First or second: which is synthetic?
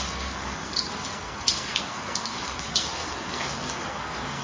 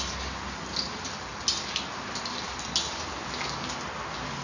first